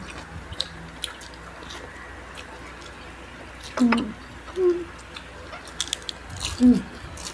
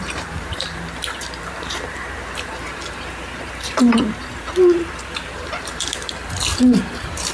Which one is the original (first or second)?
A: first